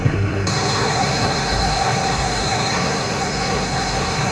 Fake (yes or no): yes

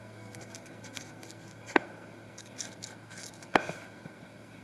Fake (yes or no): yes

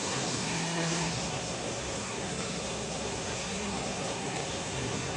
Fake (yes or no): yes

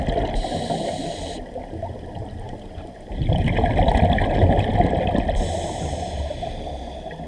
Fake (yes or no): no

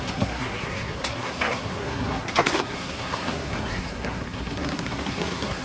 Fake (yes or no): yes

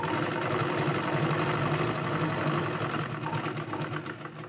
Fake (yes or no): no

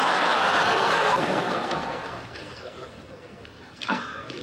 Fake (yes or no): yes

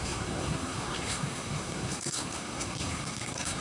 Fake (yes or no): yes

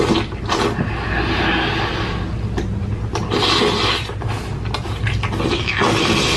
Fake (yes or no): no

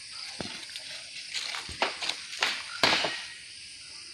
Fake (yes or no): no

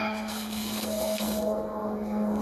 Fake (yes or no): yes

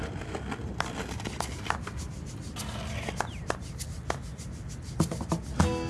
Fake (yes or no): no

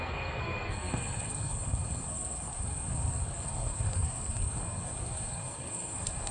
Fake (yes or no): yes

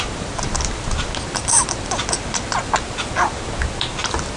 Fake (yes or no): no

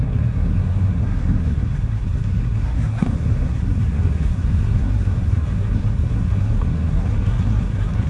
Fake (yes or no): yes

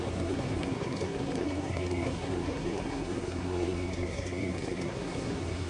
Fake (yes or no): yes